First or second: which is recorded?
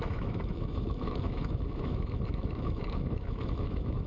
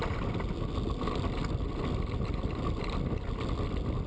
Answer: second